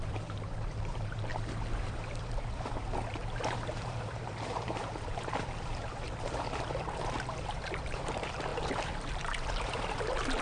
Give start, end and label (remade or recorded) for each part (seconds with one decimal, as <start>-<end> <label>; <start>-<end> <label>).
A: 0.0-10.4 remade